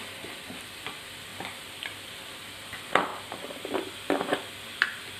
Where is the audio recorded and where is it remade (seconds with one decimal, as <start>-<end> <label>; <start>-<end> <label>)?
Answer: 0.0-1.3 recorded; 1.3-2.3 remade; 2.3-3.1 recorded; 3.1-3.6 remade; 3.6-5.2 recorded